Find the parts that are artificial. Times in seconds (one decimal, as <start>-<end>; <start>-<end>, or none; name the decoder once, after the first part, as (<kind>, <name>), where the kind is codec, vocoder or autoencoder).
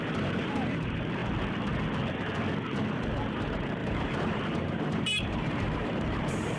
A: 0.0-1.2 (vocoder, BigVGAN v2); 3.3-6.6